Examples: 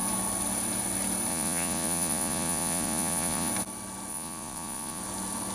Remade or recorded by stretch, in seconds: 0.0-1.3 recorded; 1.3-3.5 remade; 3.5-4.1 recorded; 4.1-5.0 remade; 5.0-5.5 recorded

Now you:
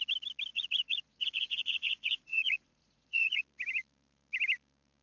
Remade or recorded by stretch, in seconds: 0.0-0.5 recorded; 0.5-3.4 remade; 3.4-5.0 recorded